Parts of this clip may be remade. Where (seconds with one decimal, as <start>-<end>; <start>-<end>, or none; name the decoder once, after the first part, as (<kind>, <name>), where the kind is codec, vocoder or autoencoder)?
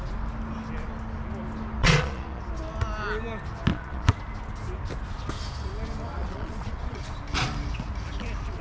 1.8-2.4 (vocoder, Vocos); 3.7-4.2; 6.2-7.0